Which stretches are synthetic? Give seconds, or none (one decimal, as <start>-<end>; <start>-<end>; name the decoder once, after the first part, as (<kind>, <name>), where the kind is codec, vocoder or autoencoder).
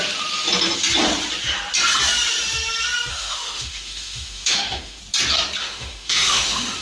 3.1-5.0 (autoencoder, DAC-VAE); 5.6-6.8